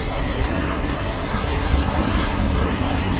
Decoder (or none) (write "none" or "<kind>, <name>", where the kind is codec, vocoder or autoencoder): codec, SNAC